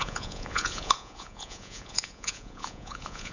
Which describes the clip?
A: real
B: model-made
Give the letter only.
B